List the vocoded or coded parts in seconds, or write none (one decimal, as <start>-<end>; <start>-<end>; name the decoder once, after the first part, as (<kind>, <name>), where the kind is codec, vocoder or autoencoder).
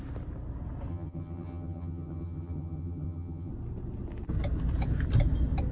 0.9-3.5 (vocoder, HiFi-GAN)